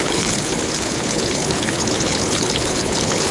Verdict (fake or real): fake